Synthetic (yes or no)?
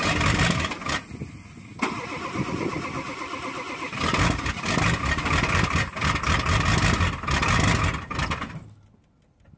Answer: no